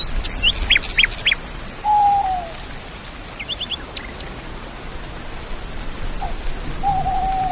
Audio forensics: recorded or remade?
recorded